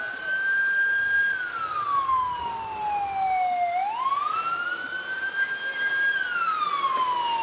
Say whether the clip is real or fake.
real